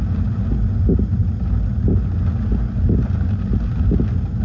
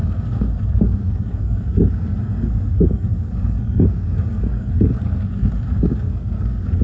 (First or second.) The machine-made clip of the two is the second